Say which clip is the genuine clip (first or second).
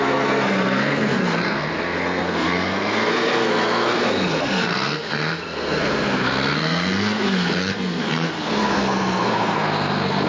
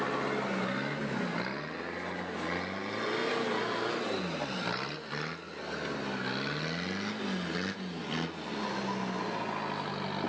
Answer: second